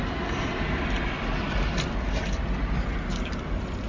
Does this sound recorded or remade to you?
recorded